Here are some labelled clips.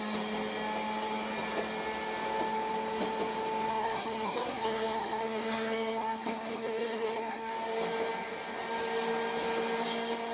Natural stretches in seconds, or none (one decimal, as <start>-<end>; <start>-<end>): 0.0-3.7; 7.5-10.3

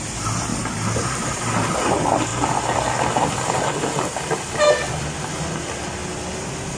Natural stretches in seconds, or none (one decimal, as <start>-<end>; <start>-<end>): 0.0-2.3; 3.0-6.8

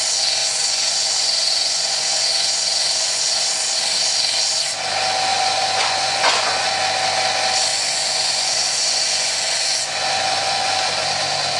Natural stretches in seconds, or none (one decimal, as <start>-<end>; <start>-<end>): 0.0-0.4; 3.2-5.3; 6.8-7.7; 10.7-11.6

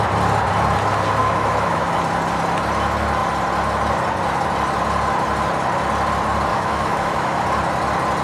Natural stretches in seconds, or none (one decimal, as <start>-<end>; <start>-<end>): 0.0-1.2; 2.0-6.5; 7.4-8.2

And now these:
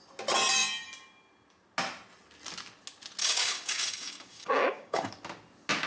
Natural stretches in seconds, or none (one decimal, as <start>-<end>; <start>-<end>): 0.0-3.2; 5.1-5.9

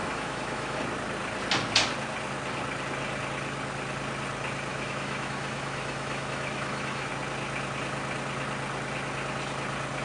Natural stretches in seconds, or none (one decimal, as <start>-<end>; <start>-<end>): 0.8-4.7; 7.1-10.0

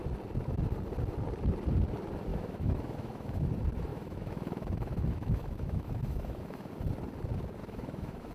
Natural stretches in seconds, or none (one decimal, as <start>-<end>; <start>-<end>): 0.0-2.3; 3.5-3.9; 6.7-7.6

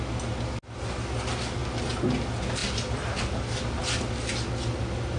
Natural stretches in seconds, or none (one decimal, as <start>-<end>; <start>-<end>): 0.0-5.2